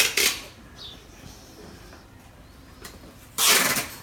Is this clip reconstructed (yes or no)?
yes